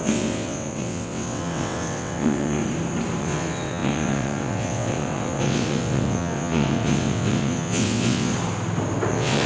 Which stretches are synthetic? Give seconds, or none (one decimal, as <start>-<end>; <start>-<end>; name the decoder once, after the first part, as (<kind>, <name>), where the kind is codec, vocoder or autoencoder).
0.0-2.6 (vocoder, WaveNeXt); 3.2-8.3; 9.1-9.5